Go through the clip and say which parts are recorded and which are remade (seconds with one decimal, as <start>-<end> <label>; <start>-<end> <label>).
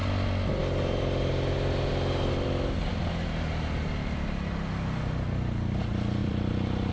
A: 0.0-6.2 recorded; 6.2-6.9 remade